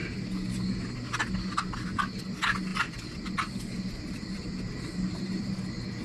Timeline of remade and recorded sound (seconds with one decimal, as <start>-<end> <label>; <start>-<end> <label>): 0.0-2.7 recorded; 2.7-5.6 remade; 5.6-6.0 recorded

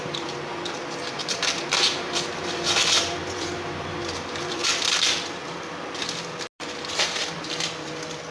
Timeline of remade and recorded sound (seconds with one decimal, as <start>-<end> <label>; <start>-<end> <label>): 0.0-4.6 remade; 4.6-6.6 recorded; 6.6-7.2 remade; 7.2-8.3 recorded

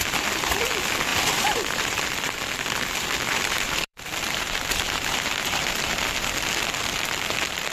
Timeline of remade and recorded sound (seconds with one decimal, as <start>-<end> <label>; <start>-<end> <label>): 0.0-1.1 recorded; 1.1-2.0 remade; 2.0-3.3 recorded; 3.3-5.3 remade; 5.3-7.7 recorded